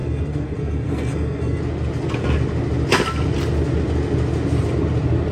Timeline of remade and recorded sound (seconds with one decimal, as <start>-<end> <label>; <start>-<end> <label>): 0.0-1.6 remade; 1.6-5.3 recorded